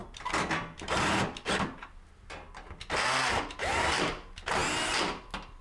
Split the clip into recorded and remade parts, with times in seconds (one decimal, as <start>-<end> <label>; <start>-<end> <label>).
0.0-5.6 recorded